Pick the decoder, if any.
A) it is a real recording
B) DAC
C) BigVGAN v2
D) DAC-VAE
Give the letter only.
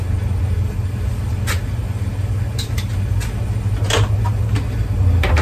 A